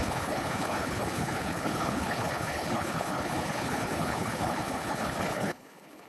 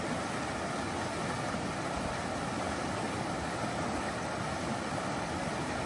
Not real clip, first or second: first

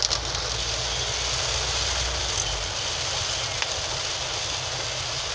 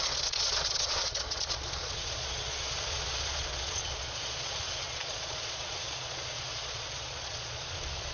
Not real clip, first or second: second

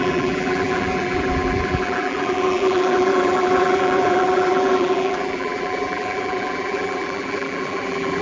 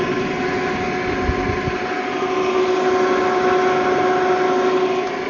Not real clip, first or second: first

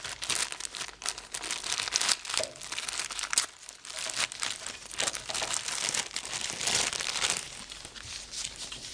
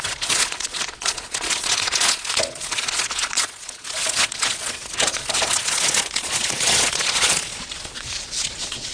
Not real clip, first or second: second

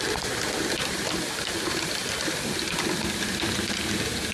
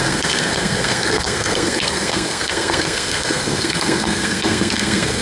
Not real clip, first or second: second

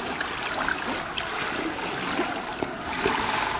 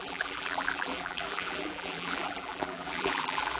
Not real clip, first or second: second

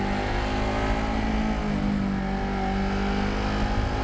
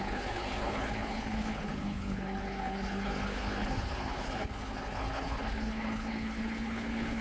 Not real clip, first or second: second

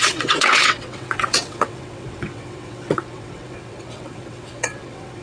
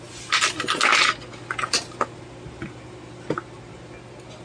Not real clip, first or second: first